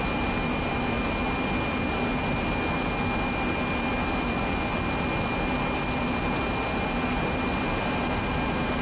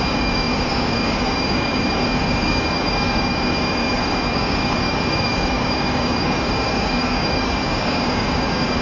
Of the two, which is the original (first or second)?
first